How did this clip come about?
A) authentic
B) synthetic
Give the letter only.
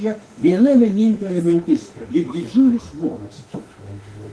B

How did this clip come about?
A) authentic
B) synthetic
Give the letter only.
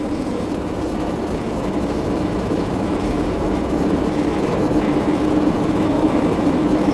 B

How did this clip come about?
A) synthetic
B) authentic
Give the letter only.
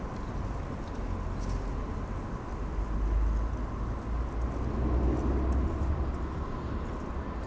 B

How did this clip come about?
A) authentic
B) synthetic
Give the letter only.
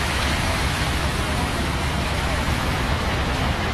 B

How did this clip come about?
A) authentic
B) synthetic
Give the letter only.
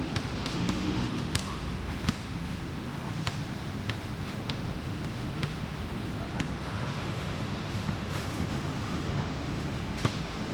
B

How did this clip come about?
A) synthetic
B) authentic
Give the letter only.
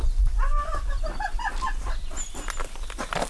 B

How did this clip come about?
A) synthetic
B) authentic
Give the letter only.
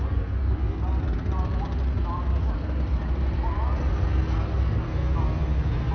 B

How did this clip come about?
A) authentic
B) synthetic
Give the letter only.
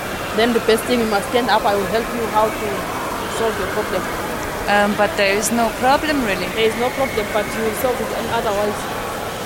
A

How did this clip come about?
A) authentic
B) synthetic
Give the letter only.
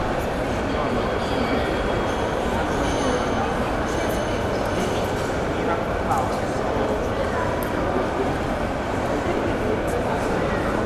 A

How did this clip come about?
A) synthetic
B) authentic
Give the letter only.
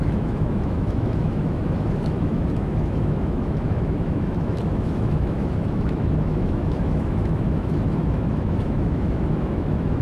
A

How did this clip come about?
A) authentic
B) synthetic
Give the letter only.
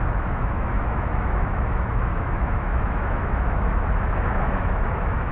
B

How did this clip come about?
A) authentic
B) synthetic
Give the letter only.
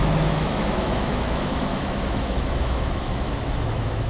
B